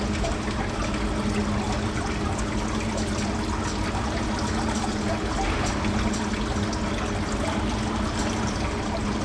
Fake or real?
real